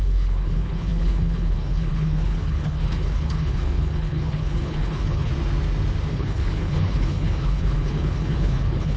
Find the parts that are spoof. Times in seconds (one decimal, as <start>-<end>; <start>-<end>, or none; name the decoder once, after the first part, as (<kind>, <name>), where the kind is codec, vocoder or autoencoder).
0.0-5.3 (codec, HILCodec); 6.1-9.0